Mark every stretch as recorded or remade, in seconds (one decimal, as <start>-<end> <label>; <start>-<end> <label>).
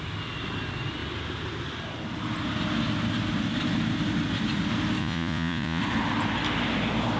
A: 0.0-5.0 recorded; 5.0-5.8 remade; 5.8-7.2 recorded